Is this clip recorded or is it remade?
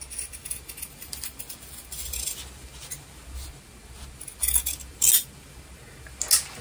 recorded